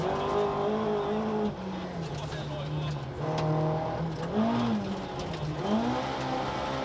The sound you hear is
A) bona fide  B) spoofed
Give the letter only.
A